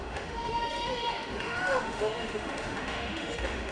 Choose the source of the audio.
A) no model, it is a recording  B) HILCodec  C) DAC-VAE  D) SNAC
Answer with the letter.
C